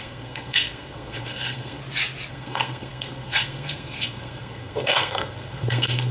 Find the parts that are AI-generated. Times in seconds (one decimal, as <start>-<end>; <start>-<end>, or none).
0.0-1.8; 2.3-6.1